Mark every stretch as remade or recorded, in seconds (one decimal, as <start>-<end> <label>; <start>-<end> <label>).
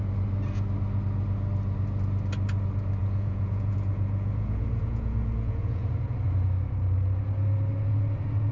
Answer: 0.0-3.0 recorded; 3.0-5.8 remade; 5.8-8.5 recorded